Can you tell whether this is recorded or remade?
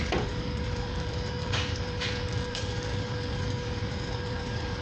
remade